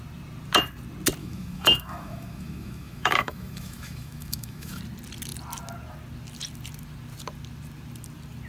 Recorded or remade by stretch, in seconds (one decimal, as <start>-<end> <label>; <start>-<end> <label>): 0.0-1.2 recorded; 1.2-4.8 remade; 4.8-8.5 recorded

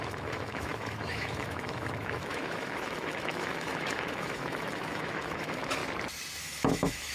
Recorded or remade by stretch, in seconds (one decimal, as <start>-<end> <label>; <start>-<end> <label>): 0.0-5.8 remade; 5.8-6.4 recorded; 6.4-7.1 remade

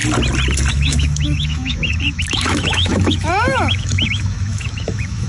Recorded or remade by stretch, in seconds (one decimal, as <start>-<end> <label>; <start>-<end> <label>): 0.0-0.7 recorded; 0.7-5.3 remade

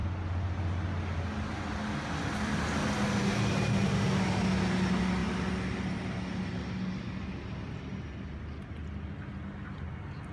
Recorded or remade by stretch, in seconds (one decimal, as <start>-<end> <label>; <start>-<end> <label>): 0.0-10.3 recorded

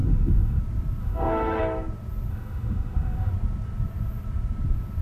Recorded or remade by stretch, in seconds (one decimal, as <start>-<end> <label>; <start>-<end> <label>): 0.0-0.6 remade; 0.6-1.0 recorded; 1.0-1.6 remade; 1.6-2.3 recorded; 2.3-3.3 remade; 3.3-5.0 recorded

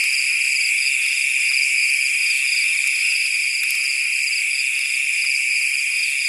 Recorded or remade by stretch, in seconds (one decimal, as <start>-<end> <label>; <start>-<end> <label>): 0.0-6.3 recorded

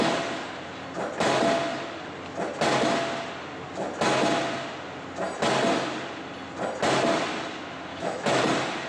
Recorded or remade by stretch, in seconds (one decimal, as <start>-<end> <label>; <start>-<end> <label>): 0.0-7.9 recorded; 7.9-8.4 remade; 8.4-8.9 recorded